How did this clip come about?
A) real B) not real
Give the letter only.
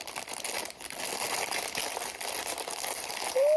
A